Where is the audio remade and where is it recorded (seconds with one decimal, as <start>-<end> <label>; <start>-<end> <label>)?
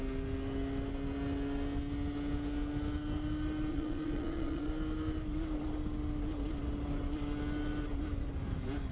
0.0-3.7 recorded; 3.7-4.7 remade; 4.7-8.9 recorded